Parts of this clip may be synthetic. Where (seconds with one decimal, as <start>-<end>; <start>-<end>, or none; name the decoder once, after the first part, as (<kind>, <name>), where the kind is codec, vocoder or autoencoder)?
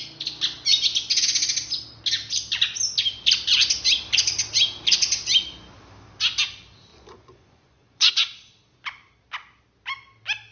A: 6.9-8.1 (vocoder, Vocos)